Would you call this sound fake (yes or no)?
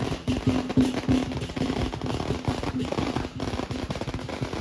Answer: no